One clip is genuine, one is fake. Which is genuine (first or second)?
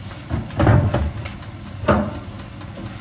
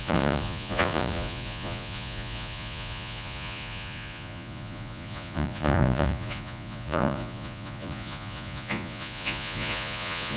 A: first